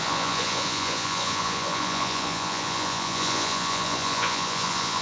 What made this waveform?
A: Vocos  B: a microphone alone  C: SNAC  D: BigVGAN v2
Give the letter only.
A